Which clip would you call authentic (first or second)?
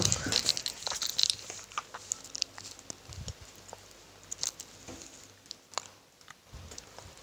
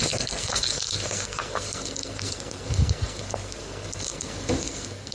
first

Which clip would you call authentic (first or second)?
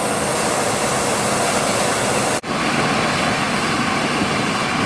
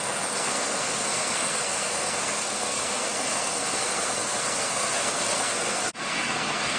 first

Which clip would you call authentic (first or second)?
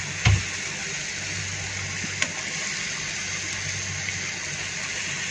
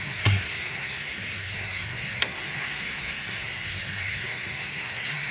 first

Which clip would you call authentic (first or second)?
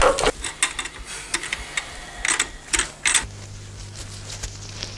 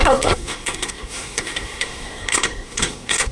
first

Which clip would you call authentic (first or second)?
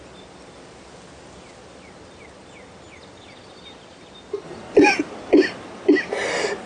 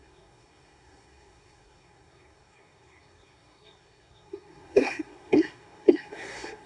first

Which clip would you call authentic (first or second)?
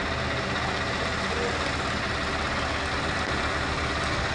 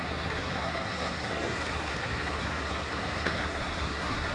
first